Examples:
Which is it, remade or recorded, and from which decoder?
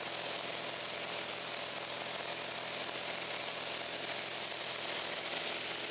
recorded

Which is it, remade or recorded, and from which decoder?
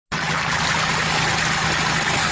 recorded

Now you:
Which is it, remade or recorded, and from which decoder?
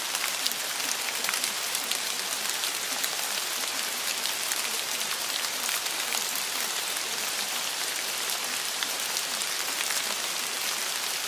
remade, vocoder, BigVGAN v2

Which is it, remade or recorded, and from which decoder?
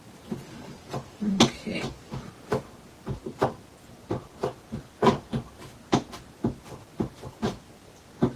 recorded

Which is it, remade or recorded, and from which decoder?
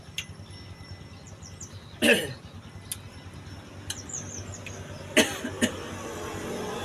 recorded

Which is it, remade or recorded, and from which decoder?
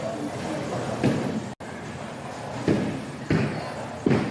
recorded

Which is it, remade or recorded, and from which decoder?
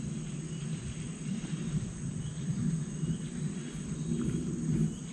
recorded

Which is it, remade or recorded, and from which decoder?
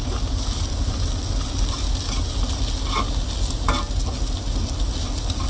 recorded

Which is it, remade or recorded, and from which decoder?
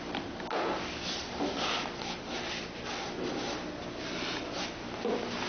recorded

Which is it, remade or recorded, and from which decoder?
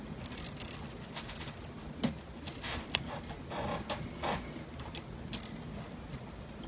recorded